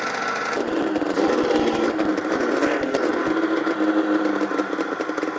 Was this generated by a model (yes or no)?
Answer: no